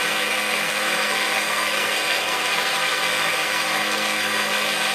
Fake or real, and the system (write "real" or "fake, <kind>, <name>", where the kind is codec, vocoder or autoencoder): fake, codec, SNAC